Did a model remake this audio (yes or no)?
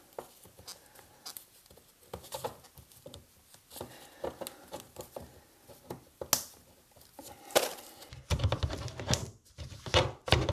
no